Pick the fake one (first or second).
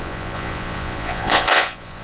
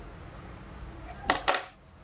first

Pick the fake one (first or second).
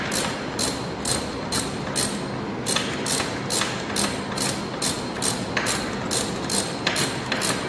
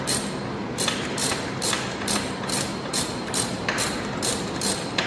second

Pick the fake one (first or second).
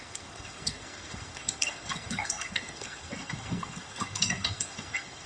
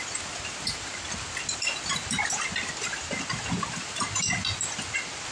first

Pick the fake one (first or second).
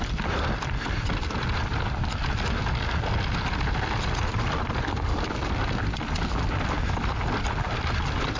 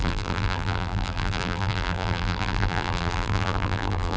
second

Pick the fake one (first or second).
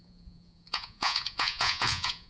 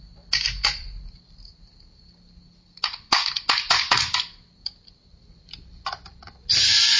first